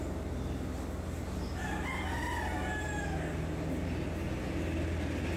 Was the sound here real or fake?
real